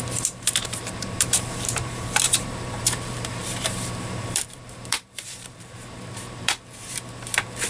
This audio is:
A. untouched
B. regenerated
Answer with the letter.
B